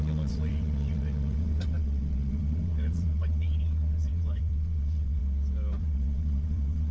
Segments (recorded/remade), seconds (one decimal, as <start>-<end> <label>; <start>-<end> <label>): 0.0-5.2 remade; 5.2-5.8 recorded; 5.8-6.9 remade